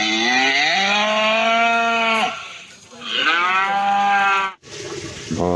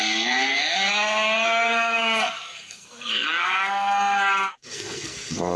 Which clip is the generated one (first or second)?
second